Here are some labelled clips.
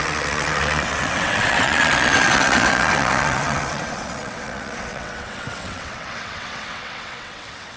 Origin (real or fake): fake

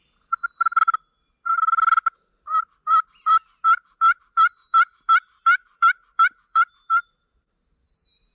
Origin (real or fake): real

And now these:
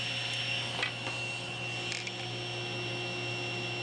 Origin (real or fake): real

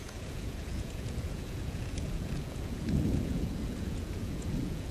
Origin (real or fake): fake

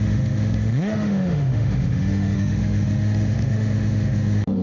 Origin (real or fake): fake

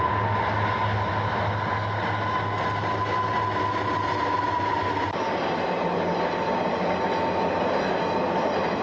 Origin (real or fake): real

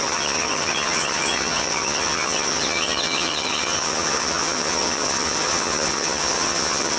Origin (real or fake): fake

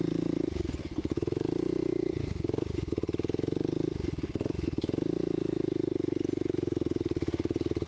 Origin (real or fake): real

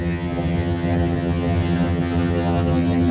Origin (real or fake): fake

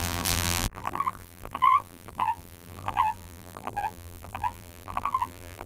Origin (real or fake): fake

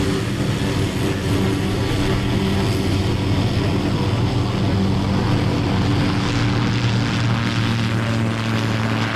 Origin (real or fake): real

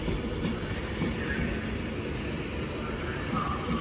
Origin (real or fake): real